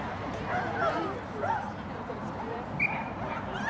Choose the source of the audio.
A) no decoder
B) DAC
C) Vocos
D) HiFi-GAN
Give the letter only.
A